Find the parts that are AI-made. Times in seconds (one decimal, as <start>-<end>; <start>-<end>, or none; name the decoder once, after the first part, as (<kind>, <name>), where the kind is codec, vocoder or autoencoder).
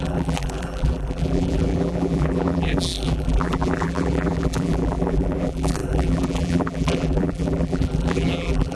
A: 0.0-8.8 (vocoder, BigVGAN v2)